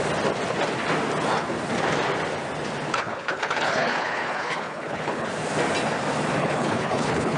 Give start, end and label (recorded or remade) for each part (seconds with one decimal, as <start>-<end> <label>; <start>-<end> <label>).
0.0-2.9 recorded; 2.9-5.3 remade; 5.3-6.4 recorded; 6.4-7.4 remade